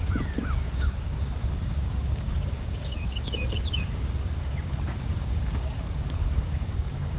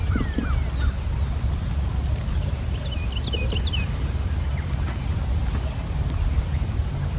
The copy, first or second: first